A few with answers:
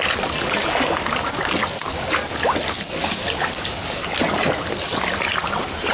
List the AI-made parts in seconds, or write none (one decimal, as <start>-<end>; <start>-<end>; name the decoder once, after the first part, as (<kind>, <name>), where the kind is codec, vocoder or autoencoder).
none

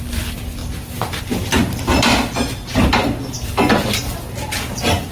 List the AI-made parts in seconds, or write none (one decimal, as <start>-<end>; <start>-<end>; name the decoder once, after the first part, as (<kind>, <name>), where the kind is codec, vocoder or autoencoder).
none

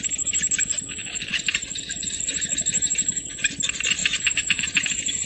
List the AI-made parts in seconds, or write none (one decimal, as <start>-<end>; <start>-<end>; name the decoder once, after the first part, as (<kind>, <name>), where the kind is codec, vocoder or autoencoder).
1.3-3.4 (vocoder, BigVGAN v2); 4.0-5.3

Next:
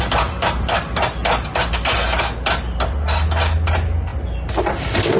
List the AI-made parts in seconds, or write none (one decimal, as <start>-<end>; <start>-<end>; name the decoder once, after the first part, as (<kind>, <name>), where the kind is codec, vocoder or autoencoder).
none

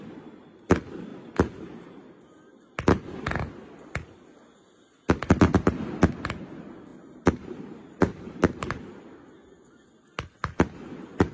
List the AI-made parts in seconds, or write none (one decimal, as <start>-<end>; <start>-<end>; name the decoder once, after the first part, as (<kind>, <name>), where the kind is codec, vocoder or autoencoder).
6.9-9.0 (vocoder, BigVGAN v2)

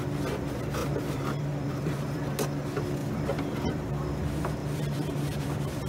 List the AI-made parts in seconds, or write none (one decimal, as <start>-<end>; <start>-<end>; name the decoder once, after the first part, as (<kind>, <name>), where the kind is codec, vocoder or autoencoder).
0.8-2.2 (vocoder, BigVGAN v2); 3.0-4.1; 4.6-5.9